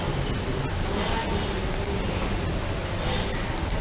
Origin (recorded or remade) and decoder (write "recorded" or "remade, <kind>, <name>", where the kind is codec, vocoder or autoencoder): recorded